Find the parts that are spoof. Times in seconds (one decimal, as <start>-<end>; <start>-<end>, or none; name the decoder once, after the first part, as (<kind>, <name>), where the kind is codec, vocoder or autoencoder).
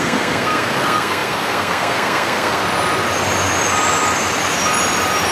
0.0-2.6 (codec, SNAC)